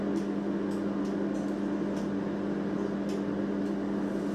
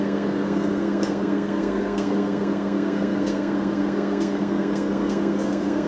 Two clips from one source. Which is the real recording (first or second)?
first